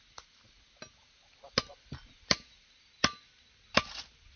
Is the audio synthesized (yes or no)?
no